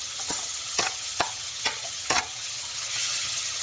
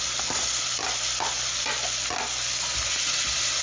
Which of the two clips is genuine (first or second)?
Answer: second